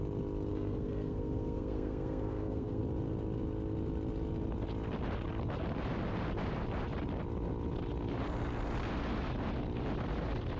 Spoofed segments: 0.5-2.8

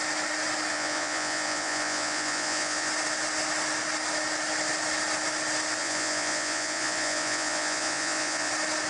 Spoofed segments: 0.7-2.9; 5.8-8.5

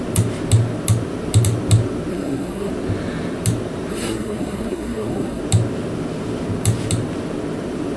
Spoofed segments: 2.1-2.7; 3.9-5.4

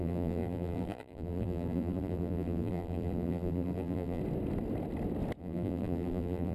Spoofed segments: 0.0-4.2; 5.4-6.5